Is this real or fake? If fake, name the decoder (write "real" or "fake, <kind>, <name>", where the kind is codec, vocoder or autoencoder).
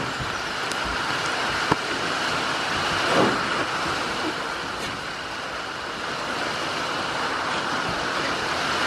real